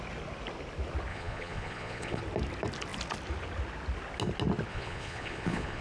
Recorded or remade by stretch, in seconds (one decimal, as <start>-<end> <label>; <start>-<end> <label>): 0.0-1.1 recorded; 1.1-2.2 remade; 2.2-4.7 recorded; 4.7-5.8 remade